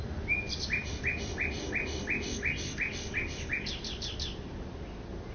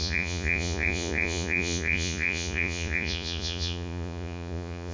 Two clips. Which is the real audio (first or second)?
first